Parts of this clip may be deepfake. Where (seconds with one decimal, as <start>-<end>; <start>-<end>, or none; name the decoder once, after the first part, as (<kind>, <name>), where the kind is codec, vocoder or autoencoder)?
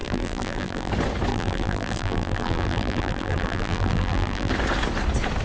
0.0-0.9 (vocoder, BigVGAN v2); 1.3-4.5